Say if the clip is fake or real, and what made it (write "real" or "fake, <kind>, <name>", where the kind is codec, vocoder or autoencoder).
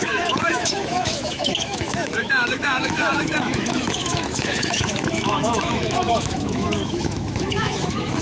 fake, autoencoder, DAC-VAE